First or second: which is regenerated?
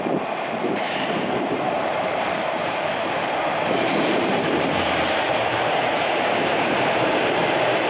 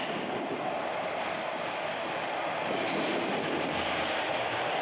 first